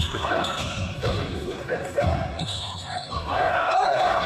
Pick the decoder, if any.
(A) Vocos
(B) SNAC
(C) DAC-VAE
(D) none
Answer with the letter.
B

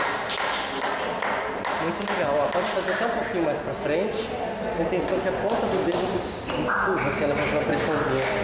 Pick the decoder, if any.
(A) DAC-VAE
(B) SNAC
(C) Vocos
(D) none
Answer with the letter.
D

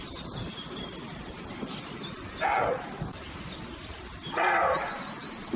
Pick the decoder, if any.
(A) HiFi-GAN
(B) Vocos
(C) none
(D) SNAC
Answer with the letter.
C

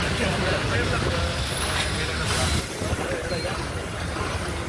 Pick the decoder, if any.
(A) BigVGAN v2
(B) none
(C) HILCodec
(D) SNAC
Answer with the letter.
B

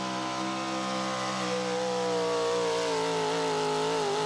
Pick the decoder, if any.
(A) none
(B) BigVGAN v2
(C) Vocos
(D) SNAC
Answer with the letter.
A